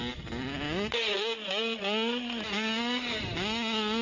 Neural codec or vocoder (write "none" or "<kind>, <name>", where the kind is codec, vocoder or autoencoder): none